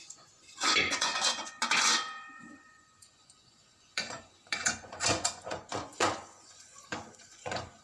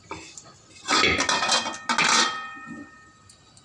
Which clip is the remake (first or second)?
first